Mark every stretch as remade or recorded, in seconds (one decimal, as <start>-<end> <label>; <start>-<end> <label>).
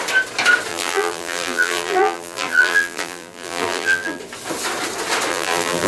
0.0-0.7 recorded; 0.7-4.2 remade; 4.2-5.3 recorded; 5.3-5.9 remade